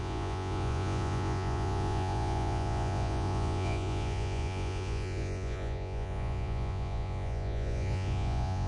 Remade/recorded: remade